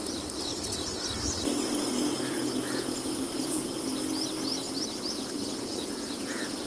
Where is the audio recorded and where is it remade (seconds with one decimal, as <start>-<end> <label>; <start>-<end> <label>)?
0.0-2.1 recorded; 2.1-3.9 remade; 3.9-5.1 recorded; 5.1-6.7 remade